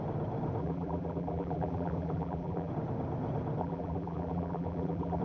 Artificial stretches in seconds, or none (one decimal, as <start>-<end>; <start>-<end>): 0.6-2.7; 3.6-5.2